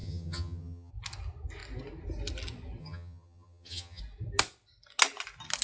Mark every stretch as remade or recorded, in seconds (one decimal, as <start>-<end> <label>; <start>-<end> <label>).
0.0-0.9 remade; 0.9-2.8 recorded; 2.8-4.0 remade; 4.0-5.6 recorded